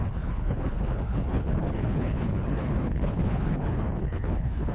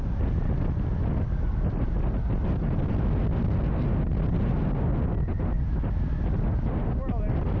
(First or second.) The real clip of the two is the second